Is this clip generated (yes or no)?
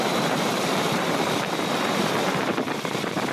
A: yes